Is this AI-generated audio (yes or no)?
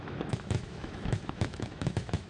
yes